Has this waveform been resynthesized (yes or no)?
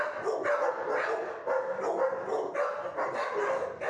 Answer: no